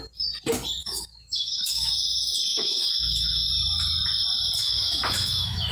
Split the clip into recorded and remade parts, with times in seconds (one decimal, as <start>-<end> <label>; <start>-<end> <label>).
0.0-0.8 recorded; 0.8-1.9 remade; 1.9-2.5 recorded; 2.5-3.5 remade; 3.5-4.6 recorded; 4.6-5.7 remade

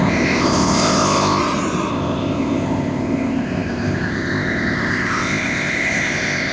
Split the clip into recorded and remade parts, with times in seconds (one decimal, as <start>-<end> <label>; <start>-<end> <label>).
0.0-1.4 remade; 1.4-1.9 recorded; 1.9-6.5 remade

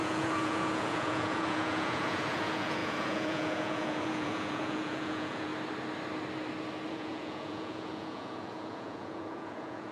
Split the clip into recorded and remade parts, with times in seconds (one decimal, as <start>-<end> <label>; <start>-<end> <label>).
0.0-5.5 remade; 5.5-6.9 recorded; 6.9-9.9 remade

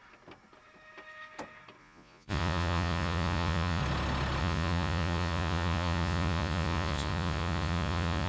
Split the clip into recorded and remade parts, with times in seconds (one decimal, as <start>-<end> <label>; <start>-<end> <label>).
0.0-1.8 recorded; 1.8-3.8 remade; 3.8-4.4 recorded; 4.4-8.3 remade

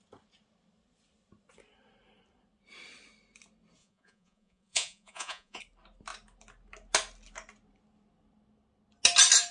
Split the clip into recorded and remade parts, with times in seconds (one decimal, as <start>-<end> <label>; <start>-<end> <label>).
0.0-3.8 recorded; 3.8-5.6 remade; 5.6-9.5 recorded

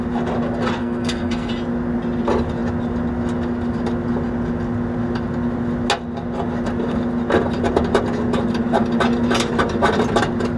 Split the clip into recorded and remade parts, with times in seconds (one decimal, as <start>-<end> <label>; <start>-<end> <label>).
0.0-0.8 recorded; 0.8-1.5 remade; 1.5-10.6 recorded